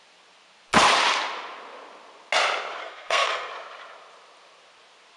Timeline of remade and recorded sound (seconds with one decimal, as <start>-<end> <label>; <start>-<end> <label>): 0.0-2.8 recorded; 2.8-3.5 remade; 3.5-5.2 recorded